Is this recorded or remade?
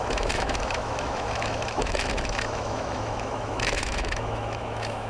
remade